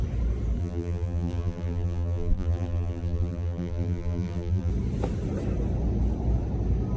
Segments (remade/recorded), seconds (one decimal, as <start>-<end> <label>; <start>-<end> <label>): 0.0-0.6 recorded; 0.6-4.7 remade; 4.7-7.0 recorded